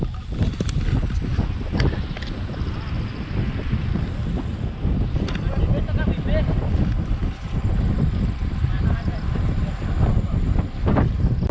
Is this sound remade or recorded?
recorded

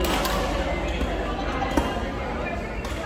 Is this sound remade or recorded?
recorded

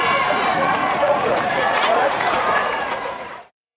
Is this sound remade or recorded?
remade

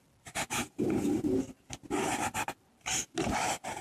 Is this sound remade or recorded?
recorded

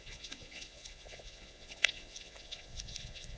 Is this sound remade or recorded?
remade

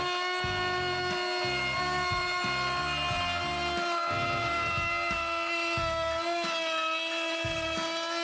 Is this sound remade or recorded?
recorded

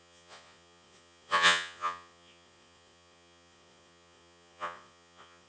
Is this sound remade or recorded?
remade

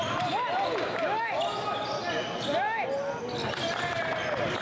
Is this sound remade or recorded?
recorded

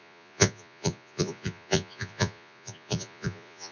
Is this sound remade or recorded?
remade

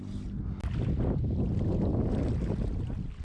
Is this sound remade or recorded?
recorded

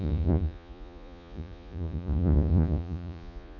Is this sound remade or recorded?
remade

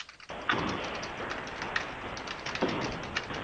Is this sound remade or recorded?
recorded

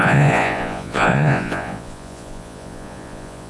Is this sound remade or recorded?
remade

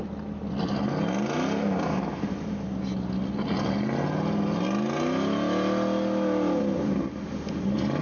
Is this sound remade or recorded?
recorded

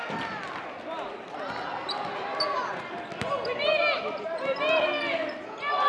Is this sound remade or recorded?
recorded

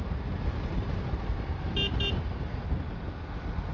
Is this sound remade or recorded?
recorded